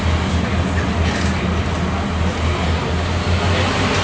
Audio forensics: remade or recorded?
recorded